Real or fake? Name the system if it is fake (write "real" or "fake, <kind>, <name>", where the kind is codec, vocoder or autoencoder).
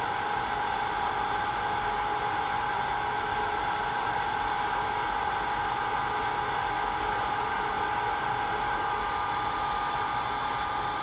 real